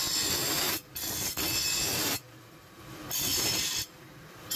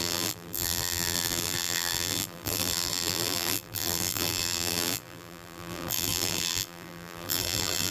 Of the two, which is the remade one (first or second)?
second